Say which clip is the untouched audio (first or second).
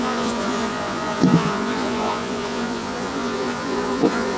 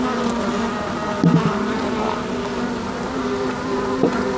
second